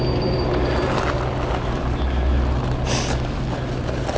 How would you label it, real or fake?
real